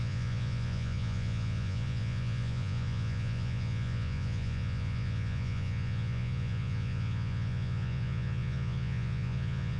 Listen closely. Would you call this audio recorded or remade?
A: remade